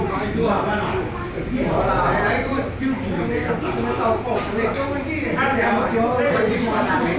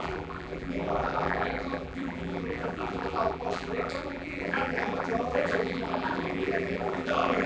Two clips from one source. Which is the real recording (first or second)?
first